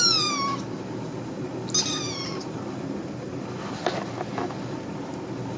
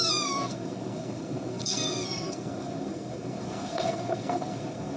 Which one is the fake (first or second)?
second